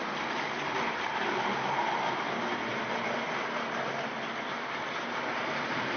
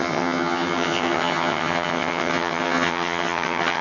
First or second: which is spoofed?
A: second